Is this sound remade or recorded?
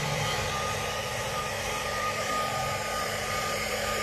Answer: remade